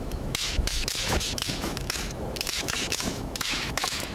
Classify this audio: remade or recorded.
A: remade